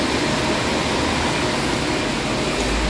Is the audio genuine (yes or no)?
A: yes